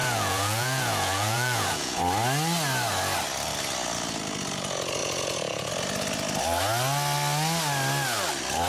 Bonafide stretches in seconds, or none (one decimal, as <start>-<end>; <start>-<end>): 2.0-5.0; 5.7-8.7